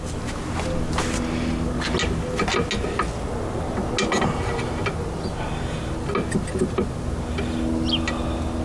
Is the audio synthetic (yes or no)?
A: no